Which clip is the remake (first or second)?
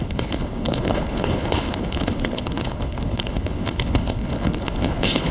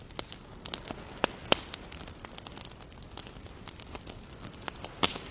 first